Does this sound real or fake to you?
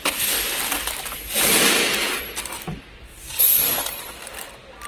real